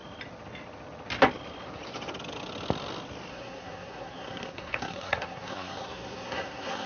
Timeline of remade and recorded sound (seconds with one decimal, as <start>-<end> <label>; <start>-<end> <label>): 0.0-3.3 recorded; 3.3-6.9 remade